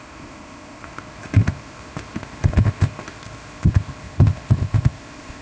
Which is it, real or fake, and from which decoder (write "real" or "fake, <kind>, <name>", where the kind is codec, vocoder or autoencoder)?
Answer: fake, codec, ZipCodec